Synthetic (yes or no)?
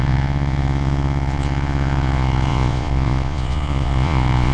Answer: yes